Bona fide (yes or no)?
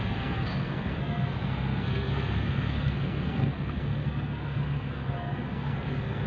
no